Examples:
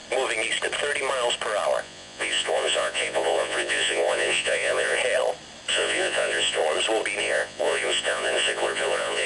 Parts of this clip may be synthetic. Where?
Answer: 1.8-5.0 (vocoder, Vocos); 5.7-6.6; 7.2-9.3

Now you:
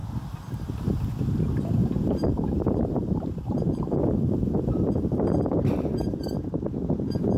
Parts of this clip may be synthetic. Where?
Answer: 1.8-6.2 (vocoder, BigVGAN v2)

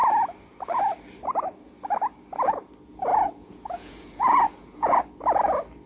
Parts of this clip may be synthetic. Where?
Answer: 3.1-5.0 (vocoder, Vocos)

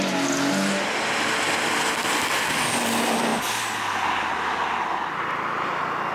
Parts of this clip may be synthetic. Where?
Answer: none

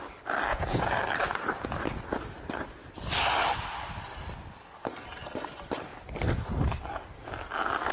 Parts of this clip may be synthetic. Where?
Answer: 0.5-1.0 (vocoder, Vocos)

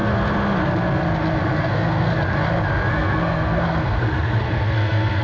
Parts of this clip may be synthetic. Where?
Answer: 1.6-2.1 (codec, SNAC); 2.9-5.2